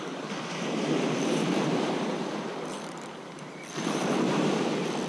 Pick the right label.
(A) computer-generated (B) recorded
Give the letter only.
A